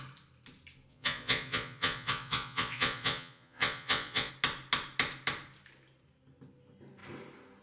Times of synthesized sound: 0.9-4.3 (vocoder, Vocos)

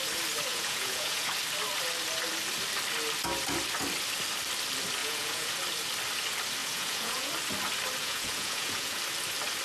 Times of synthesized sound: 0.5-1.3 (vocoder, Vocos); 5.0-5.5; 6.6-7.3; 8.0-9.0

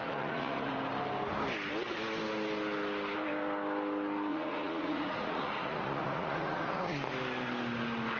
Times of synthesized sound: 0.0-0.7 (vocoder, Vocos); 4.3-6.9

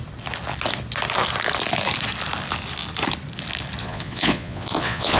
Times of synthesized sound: 3.8-5.2 (vocoder, Vocos)